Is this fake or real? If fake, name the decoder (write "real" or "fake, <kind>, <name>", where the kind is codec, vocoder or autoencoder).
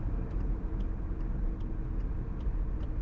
real